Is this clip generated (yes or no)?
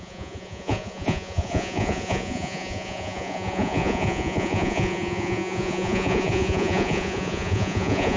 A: yes